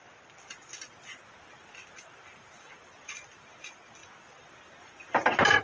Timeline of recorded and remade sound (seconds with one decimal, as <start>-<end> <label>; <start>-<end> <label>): 0.0-5.6 recorded